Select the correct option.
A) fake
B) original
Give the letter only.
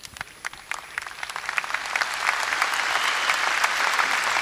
B